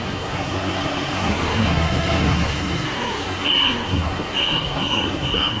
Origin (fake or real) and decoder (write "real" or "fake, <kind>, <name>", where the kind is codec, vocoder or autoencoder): fake, codec, SNAC